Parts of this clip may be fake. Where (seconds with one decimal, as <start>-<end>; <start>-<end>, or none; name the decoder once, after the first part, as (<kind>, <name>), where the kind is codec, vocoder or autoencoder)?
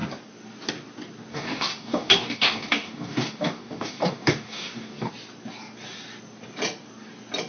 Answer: 1.3-5.1 (codec, DAC)